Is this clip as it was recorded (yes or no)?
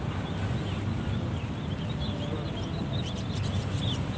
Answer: yes